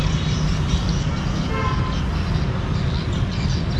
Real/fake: real